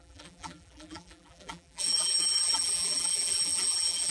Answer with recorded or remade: remade